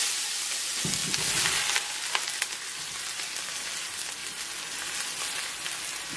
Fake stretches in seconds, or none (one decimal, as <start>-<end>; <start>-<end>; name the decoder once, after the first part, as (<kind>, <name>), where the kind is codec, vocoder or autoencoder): none